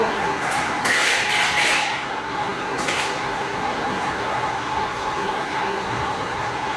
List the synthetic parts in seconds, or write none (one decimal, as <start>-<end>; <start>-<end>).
0.0-1.1; 1.7-6.8